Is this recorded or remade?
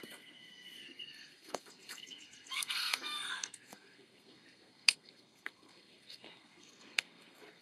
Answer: remade